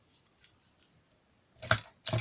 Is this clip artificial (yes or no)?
no